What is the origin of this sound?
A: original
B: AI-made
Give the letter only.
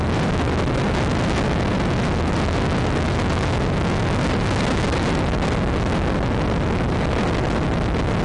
A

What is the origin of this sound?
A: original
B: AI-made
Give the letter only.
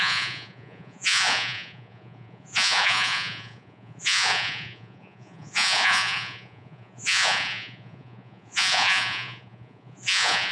B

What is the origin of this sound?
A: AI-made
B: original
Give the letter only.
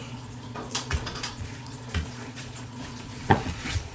A